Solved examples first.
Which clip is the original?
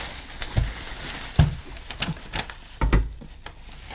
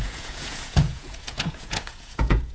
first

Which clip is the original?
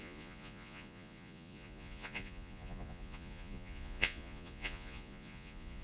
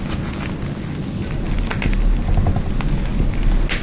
second